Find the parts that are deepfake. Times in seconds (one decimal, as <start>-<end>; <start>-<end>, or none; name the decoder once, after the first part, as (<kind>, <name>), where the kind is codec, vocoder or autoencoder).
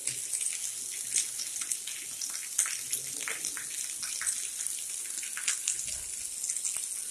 none